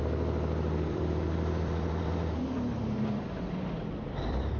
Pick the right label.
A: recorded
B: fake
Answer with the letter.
B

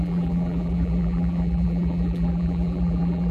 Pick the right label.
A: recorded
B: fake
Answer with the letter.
B